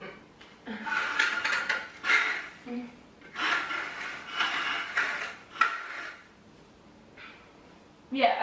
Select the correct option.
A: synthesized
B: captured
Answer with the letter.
B